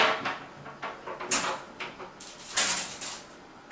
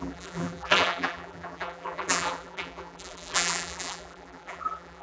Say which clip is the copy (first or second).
second